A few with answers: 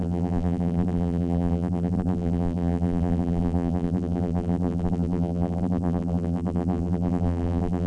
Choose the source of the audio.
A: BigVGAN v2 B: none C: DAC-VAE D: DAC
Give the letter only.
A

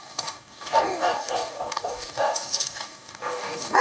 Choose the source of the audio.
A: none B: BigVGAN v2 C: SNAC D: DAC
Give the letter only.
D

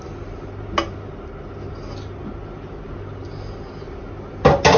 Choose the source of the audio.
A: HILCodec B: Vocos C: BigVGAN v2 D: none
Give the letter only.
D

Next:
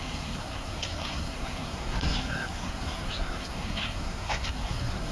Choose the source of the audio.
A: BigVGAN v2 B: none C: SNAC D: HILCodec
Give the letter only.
C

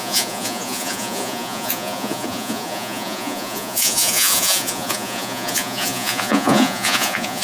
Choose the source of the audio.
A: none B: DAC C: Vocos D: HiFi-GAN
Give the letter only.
C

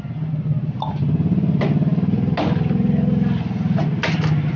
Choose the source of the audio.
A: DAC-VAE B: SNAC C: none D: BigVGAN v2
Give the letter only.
C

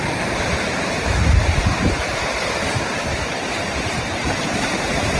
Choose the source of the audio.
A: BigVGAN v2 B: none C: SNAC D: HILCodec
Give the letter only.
A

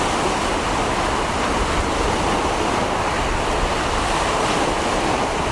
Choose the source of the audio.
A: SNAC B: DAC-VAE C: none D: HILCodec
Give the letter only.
C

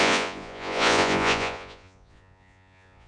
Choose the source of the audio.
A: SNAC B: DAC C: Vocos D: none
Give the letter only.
C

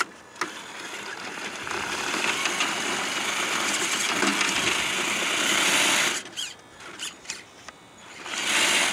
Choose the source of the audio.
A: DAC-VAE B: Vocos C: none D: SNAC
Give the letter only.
C